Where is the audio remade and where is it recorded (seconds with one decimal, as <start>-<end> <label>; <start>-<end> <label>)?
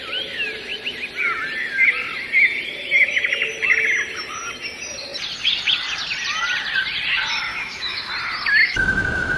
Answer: 0.0-7.5 recorded; 7.5-8.1 remade; 8.1-8.6 recorded; 8.6-9.4 remade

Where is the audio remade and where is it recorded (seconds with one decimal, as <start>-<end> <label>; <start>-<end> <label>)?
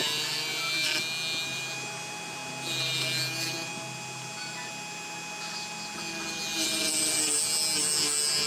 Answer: 0.0-8.5 recorded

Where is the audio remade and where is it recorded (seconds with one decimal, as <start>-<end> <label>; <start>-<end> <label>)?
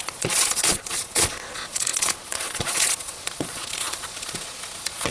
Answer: 0.0-5.1 remade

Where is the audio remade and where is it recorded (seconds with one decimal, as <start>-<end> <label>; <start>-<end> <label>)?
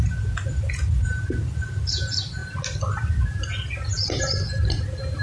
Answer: 0.0-5.2 recorded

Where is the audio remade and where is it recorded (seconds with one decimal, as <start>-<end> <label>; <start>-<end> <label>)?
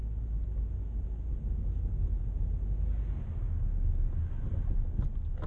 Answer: 0.0-5.5 recorded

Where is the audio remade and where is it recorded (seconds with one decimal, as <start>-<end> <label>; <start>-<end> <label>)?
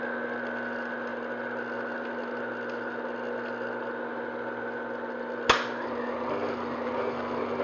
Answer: 0.0-7.6 recorded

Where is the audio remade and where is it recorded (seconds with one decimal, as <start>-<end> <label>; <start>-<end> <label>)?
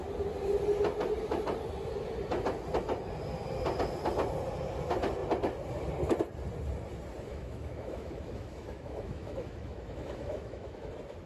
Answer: 0.0-7.3 recorded; 7.3-10.9 remade; 10.9-11.3 recorded